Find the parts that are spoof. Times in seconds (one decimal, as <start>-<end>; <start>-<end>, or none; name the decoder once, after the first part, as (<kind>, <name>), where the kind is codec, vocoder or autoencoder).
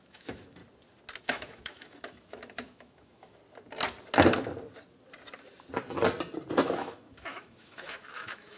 0.0-0.6 (autoencoder, DAC-VAE); 1.2-3.4; 6.8-8.6